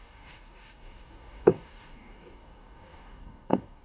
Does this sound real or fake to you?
fake